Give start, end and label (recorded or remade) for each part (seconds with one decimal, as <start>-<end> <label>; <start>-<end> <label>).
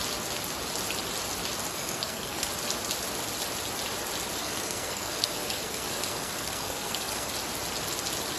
0.0-1.7 recorded; 1.7-2.5 remade; 2.5-4.4 recorded; 4.4-7.3 remade; 7.3-8.4 recorded